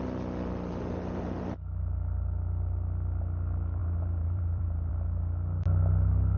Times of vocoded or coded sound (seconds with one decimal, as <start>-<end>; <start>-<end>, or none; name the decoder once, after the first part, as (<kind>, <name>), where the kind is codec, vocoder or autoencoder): 3.8-4.9 (vocoder, BigVGAN v2)